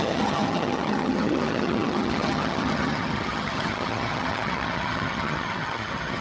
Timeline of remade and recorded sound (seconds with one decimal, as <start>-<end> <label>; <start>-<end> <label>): 0.0-6.2 remade